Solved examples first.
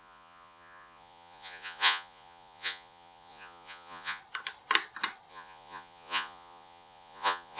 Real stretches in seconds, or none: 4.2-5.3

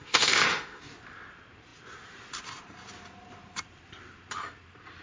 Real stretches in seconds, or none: 0.8-5.0

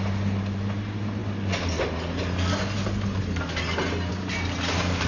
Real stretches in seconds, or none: 0.0-5.1

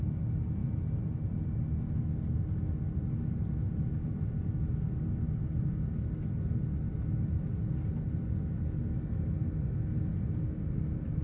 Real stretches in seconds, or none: 0.0-11.2

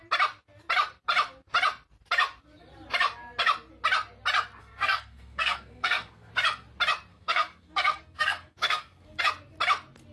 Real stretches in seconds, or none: 0.0-4.6; 6.3-7.1; 9.2-10.1

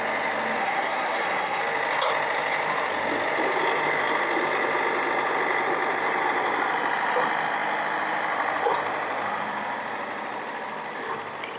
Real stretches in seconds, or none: 0.0-0.6; 1.6-11.6

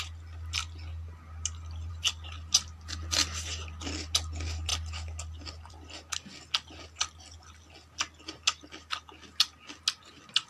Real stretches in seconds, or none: 0.0-10.5

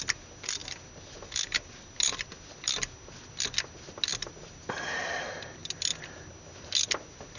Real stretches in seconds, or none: 0.0-7.4